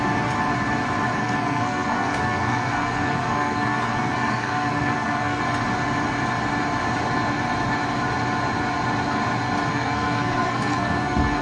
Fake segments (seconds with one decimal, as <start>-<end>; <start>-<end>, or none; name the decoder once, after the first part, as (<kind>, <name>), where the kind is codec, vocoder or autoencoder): 1.2-5.4 (codec, SNAC); 9.7-11.4